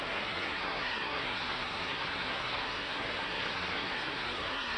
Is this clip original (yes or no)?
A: no